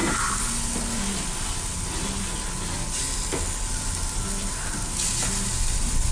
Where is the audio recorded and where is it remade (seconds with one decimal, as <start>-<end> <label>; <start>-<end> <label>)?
0.0-6.1 recorded